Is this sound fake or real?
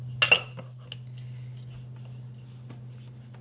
real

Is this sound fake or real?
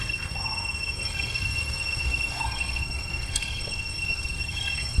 fake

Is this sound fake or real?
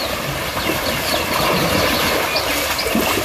real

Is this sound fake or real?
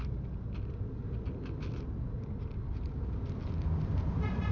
real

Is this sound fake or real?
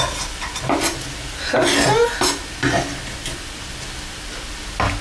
real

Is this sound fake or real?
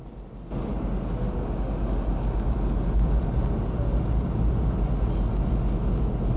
real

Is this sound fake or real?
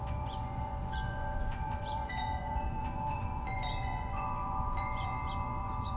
fake